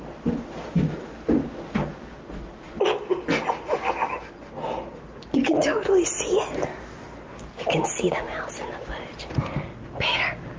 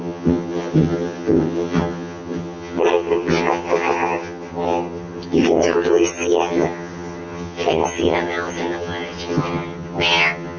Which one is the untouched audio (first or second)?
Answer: first